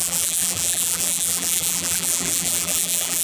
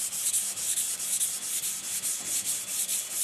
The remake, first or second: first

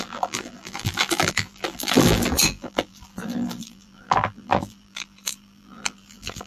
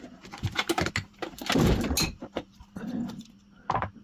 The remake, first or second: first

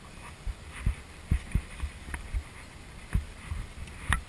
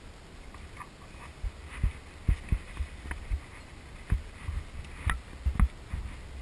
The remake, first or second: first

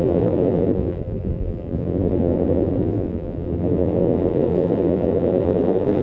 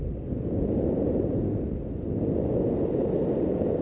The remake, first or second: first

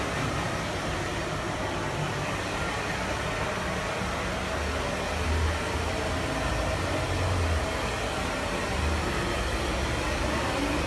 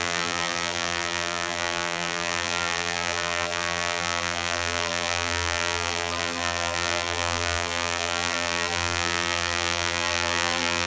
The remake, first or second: second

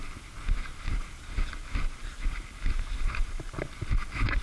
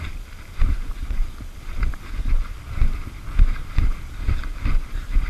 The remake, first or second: second